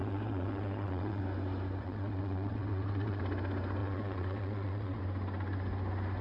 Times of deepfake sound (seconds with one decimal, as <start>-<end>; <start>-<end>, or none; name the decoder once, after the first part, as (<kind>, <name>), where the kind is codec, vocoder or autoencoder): 0.0-1.2 (vocoder, Vocos); 1.8-3.2; 3.8-5.0